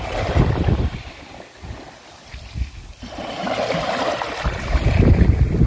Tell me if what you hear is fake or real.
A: real